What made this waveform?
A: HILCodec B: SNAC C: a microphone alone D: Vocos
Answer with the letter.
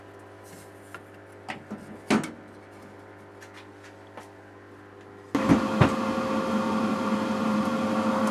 C